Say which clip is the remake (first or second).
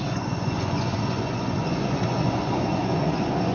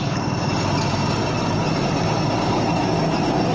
first